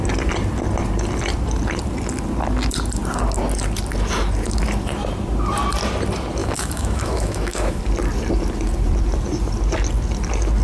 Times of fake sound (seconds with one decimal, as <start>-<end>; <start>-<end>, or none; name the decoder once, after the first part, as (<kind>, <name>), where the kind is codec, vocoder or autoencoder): 6.4-7.8 (autoencoder, DAC-VAE)